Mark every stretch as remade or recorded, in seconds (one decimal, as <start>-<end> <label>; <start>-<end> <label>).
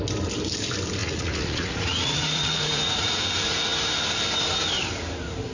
0.0-1.0 recorded; 1.0-3.2 remade; 3.2-5.5 recorded